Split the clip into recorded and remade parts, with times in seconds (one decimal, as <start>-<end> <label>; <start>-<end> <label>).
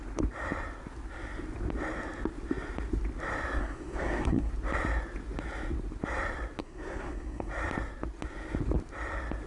0.0-3.6 recorded; 3.6-4.5 remade; 4.5-6.6 recorded; 6.6-7.5 remade; 7.5-9.5 recorded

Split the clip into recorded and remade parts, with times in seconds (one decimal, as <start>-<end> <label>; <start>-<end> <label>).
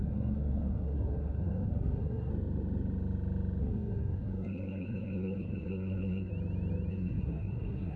0.0-2.3 remade; 2.3-3.6 recorded; 3.6-6.3 remade; 6.3-6.9 recorded; 6.9-8.0 remade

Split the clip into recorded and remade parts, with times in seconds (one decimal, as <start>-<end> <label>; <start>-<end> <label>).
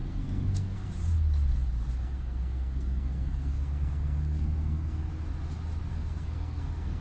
0.0-0.9 remade; 0.9-2.0 recorded; 2.0-5.1 remade; 5.1-5.9 recorded; 5.9-7.0 remade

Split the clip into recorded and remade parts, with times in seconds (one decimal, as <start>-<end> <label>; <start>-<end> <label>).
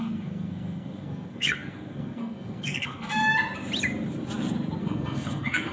0.0-3.2 remade; 3.2-4.8 recorded; 4.8-5.7 remade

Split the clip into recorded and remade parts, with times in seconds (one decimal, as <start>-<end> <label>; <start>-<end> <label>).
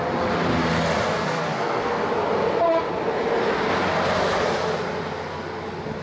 0.0-1.1 recorded; 1.1-2.0 remade; 2.0-6.0 recorded